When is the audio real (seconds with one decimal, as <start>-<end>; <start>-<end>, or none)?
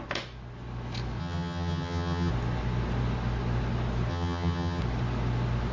0.0-1.2; 2.3-4.1; 4.8-5.7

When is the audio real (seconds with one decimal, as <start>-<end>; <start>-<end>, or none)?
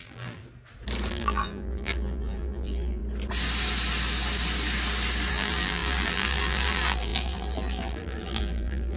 0.4-1.1; 3.0-5.3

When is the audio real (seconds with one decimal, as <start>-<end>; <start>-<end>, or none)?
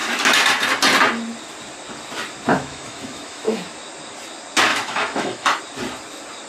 0.0-2.5; 3.6-4.7; 5.6-6.5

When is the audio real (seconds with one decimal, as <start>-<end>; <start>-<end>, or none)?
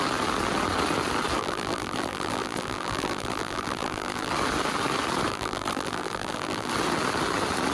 0.0-1.4; 4.3-5.3; 6.7-7.7